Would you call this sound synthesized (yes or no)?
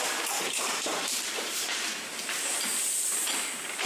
yes